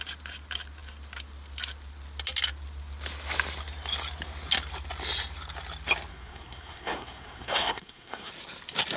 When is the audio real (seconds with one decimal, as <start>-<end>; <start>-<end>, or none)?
0.0-6.1; 8.3-9.0